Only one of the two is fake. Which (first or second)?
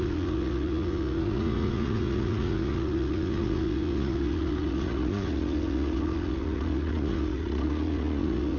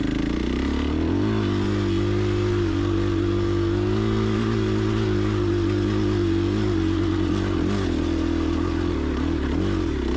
first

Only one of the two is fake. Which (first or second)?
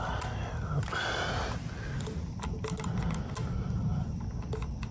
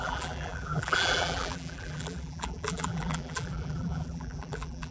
second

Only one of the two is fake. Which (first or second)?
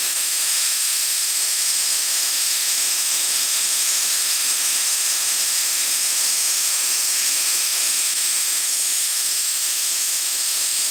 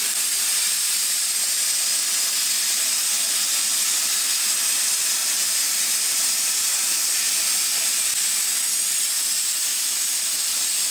first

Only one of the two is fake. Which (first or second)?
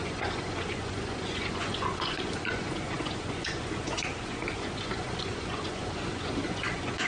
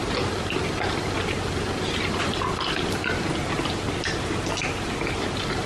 first